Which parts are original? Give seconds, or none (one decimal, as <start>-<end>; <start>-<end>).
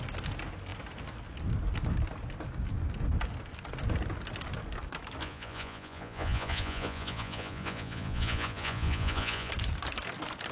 0.0-5.2; 9.5-10.5